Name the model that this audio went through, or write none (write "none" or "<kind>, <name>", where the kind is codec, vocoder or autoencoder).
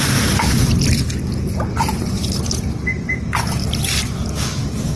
none